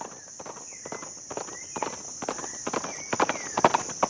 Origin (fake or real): real